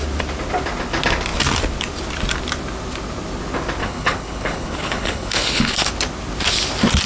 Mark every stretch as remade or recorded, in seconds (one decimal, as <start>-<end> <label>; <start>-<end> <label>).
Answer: 0.0-3.8 recorded; 3.8-5.9 remade; 5.9-7.1 recorded